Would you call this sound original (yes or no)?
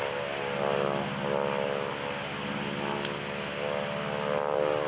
yes